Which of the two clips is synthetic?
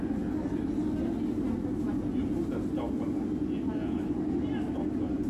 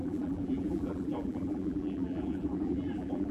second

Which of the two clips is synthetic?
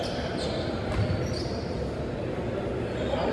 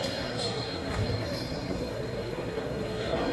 second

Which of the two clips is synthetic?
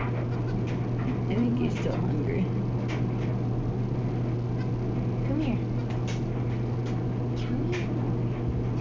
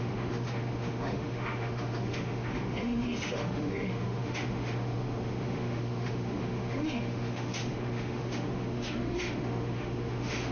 second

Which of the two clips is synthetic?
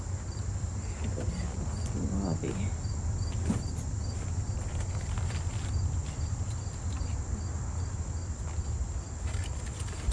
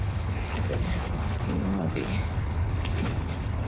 second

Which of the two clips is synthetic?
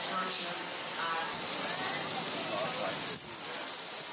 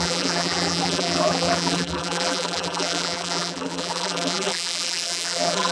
second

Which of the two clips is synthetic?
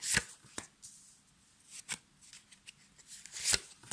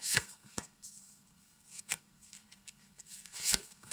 second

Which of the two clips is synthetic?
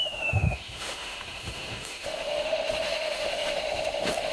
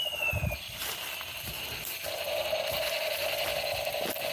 first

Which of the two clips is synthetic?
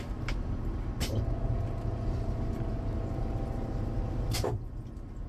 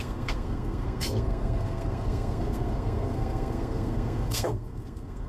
second